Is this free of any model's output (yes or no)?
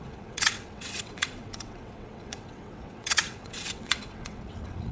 no